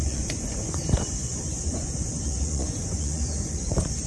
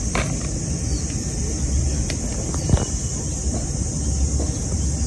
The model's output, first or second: first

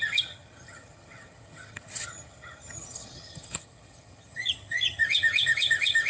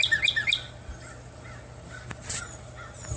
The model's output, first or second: first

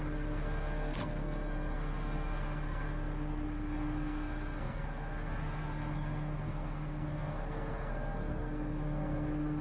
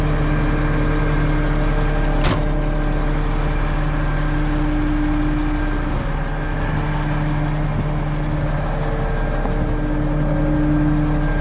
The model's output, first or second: first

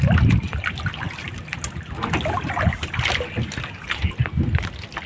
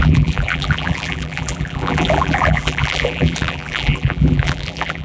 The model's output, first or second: second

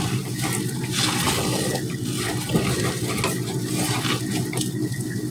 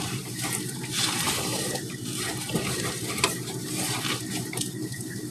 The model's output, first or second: second